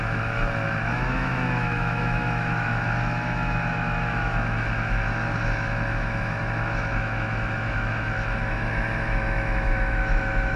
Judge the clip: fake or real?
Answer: fake